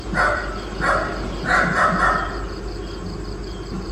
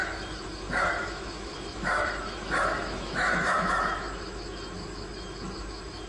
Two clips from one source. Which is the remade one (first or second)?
second